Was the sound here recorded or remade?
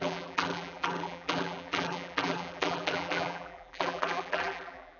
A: remade